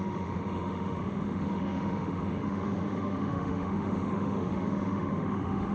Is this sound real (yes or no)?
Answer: no